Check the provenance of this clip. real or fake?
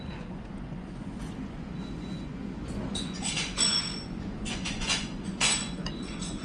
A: fake